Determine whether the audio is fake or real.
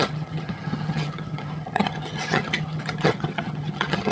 fake